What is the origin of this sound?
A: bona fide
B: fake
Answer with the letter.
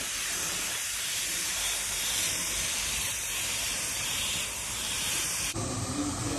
B